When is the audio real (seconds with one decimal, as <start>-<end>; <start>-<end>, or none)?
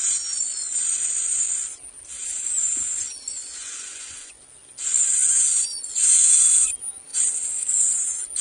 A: 0.0-3.4; 4.4-7.1; 7.7-8.4